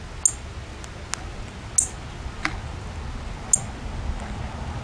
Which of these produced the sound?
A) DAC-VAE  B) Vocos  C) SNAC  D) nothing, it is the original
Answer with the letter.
D